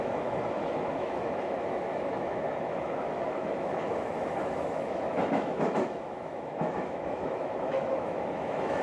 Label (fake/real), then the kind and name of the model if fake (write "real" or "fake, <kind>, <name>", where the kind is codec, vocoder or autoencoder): fake, autoencoder, DAC-VAE